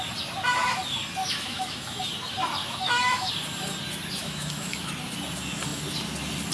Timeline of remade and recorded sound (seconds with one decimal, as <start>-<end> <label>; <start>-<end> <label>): 0.0-1.2 recorded; 1.2-2.0 remade; 2.0-2.6 recorded; 2.6-3.3 remade; 3.3-4.2 recorded; 4.2-4.9 remade; 4.9-6.5 recorded